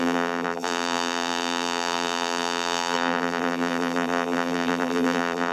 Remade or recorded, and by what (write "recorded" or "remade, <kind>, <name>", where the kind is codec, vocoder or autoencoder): remade, vocoder, BigVGAN v2